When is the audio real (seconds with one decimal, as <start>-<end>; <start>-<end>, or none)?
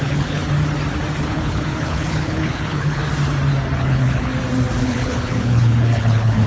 0.4-1.2; 3.0-3.8; 4.3-4.8